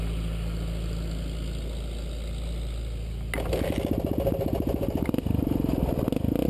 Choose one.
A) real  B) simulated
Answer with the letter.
A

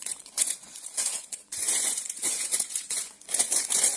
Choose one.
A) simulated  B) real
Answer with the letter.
A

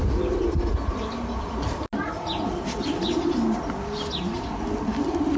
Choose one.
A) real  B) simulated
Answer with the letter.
A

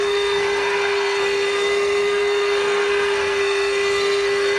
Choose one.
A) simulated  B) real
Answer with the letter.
A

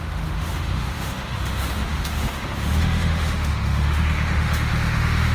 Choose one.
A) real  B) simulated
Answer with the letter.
B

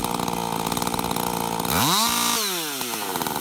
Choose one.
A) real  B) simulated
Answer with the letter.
A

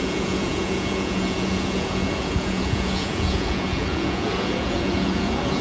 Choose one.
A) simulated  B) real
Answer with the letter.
A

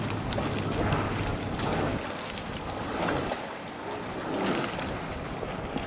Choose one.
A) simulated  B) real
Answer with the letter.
B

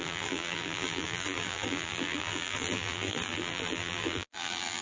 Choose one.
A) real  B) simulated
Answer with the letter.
B